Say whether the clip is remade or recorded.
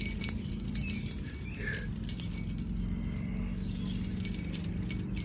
recorded